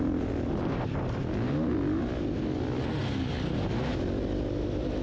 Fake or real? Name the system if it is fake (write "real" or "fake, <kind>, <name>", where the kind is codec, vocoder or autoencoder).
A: real